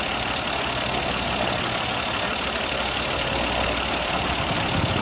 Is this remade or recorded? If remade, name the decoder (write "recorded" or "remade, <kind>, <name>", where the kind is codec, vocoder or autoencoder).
recorded